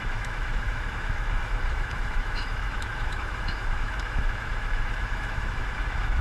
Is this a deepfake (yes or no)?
yes